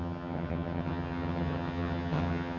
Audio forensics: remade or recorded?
remade